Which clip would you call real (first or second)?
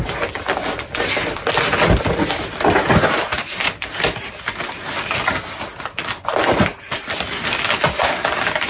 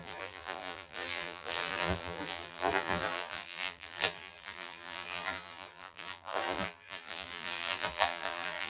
first